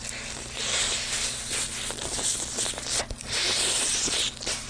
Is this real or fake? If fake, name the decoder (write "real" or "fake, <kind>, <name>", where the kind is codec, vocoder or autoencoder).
real